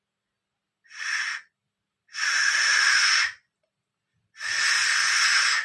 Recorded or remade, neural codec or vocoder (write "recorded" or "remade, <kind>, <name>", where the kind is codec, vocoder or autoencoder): recorded